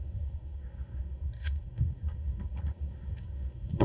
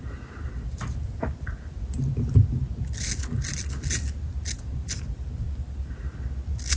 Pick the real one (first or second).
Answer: second